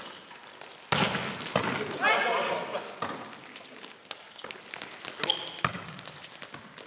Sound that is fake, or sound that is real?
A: real